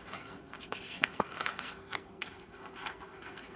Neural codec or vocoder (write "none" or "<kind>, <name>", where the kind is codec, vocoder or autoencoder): codec, SNAC